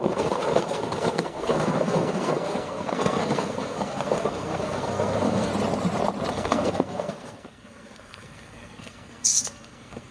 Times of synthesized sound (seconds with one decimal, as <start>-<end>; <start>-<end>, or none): 0.0-5.5; 6.3-10.1

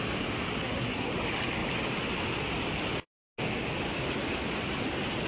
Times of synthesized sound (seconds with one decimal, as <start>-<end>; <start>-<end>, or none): 0.6-1.1